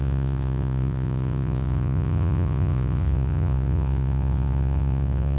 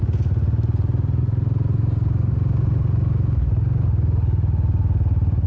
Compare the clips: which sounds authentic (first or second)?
second